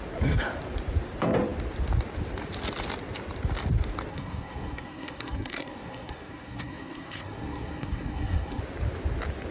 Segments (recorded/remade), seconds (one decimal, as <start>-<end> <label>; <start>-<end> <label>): 0.0-4.1 recorded; 4.1-8.6 remade; 8.6-9.5 recorded